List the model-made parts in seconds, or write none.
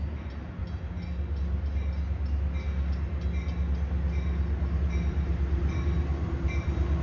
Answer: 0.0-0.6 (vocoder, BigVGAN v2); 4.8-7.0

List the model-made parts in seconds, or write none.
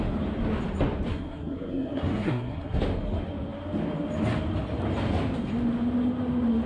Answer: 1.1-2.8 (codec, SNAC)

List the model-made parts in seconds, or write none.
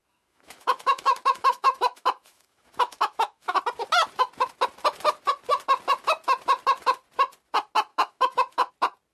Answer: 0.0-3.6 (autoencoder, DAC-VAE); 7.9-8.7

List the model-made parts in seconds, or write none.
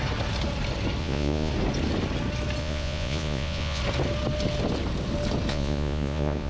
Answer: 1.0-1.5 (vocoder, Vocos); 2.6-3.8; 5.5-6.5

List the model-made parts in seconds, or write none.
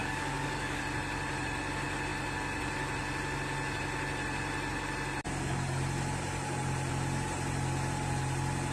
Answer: 0.0-0.8 (codec, DAC)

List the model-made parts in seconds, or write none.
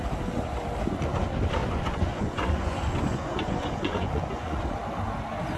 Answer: 1.6-4.6 (vocoder, Vocos)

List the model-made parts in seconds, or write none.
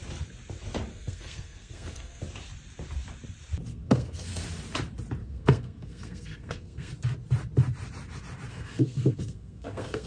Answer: 0.9-2.2 (codec, SNAC); 3.7-4.4; 5.2-6.9; 8.5-10.1